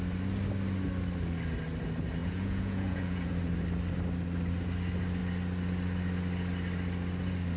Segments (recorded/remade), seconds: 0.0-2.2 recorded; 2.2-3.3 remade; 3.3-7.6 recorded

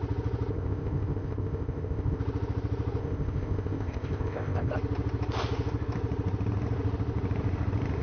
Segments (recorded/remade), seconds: 0.0-0.5 recorded; 0.5-2.2 remade; 2.2-3.0 recorded; 3.0-4.7 remade; 4.7-8.0 recorded

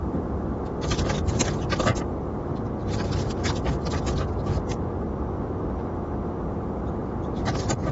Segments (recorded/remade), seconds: 0.0-2.5 remade; 2.5-6.5 recorded; 6.5-7.0 remade; 7.0-7.9 recorded

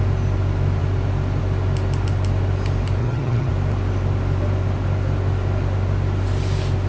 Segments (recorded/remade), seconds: 0.0-3.0 recorded; 3.0-3.5 remade; 3.5-6.9 recorded

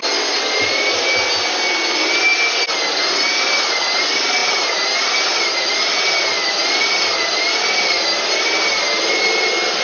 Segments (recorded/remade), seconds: 0.0-9.8 recorded